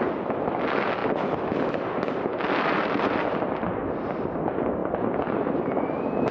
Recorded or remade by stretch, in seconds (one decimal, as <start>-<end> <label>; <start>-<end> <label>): 0.0-6.3 recorded